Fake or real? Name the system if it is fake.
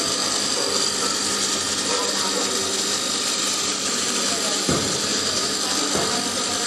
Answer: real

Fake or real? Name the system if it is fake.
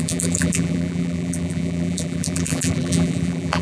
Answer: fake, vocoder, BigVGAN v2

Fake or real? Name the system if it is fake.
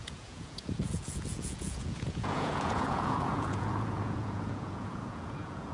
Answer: fake, vocoder, Vocos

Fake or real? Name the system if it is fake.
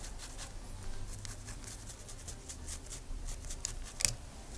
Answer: real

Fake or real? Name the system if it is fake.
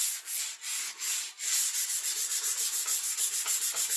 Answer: real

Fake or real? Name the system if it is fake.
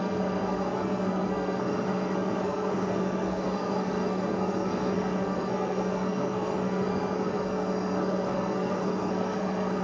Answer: fake, codec, SNAC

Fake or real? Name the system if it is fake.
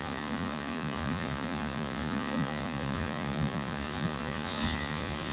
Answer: fake, vocoder, Vocos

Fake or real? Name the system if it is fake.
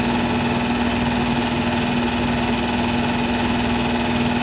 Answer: real